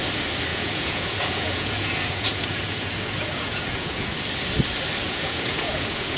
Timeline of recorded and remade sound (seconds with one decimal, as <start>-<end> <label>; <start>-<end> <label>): 0.0-0.5 recorded; 0.5-4.2 remade; 4.2-5.0 recorded; 5.0-6.2 remade